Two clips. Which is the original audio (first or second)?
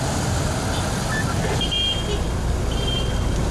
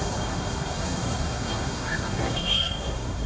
first